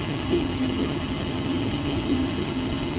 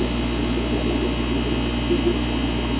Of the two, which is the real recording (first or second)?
second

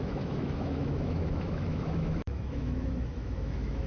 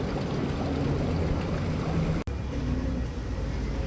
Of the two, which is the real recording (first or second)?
second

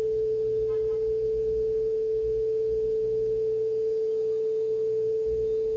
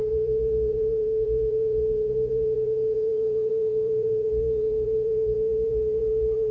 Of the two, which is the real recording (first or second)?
first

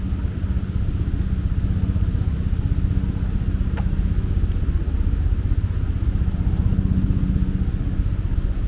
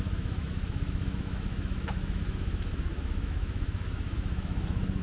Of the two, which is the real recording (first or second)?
first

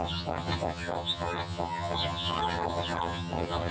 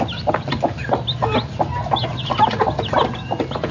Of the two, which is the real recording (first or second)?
second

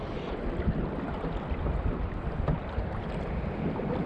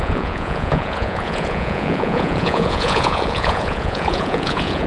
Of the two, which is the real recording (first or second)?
first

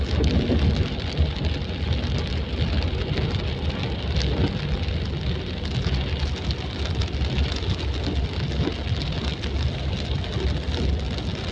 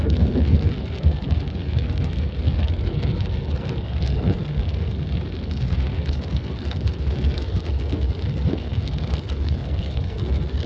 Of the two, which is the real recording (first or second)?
first